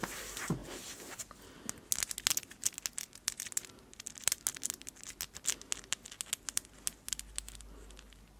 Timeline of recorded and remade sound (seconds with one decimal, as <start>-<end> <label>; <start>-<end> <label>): 0.0-8.4 recorded